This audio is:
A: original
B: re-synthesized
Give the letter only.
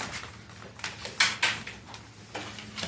A